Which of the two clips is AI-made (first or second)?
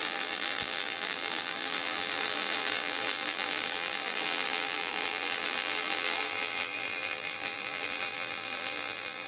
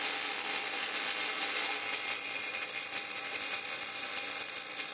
first